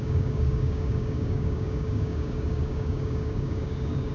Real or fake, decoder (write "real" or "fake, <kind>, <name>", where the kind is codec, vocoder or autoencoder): fake, codec, DAC